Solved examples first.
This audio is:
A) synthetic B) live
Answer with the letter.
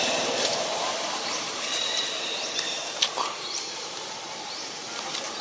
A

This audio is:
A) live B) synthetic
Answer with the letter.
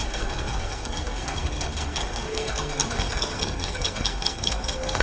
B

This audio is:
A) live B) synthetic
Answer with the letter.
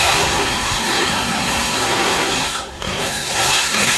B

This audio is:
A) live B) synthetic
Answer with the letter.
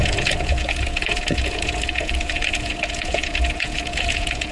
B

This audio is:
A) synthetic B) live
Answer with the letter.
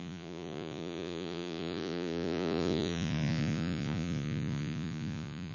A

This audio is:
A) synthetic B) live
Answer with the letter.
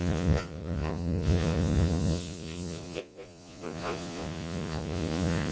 A